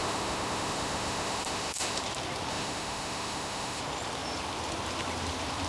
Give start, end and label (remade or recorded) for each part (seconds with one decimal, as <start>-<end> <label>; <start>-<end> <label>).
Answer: 0.0-2.0 remade; 2.0-2.5 recorded; 2.5-3.8 remade; 3.8-5.7 recorded